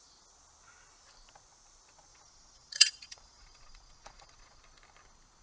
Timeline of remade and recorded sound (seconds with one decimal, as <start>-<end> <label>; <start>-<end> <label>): 0.0-2.1 recorded; 2.1-4.6 remade; 4.6-5.4 recorded